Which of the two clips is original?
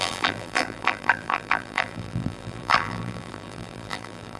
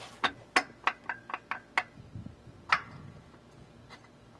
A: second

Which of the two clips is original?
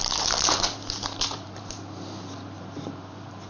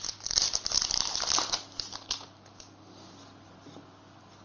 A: second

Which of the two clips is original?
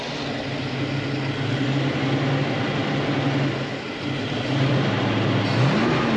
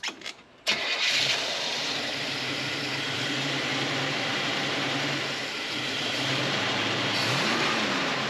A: first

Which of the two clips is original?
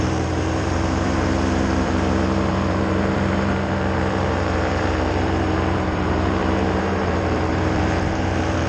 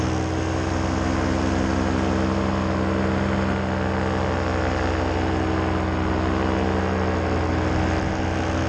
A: second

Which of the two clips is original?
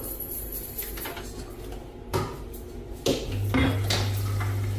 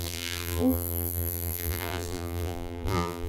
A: first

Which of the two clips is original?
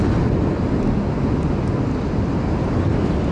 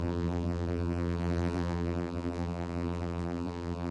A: first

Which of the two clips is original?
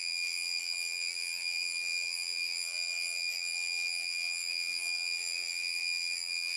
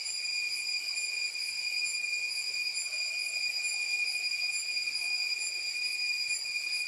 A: second